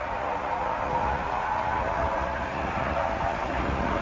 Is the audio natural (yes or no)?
no